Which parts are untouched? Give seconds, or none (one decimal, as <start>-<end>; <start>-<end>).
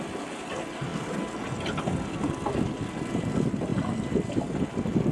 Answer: 0.0-5.1